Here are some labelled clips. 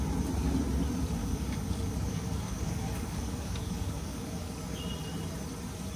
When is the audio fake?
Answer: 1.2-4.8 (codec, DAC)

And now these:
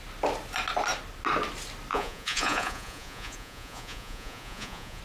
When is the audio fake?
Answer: 1.9-5.0 (vocoder, Vocos)